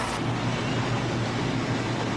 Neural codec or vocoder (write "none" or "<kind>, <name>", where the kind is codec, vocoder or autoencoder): none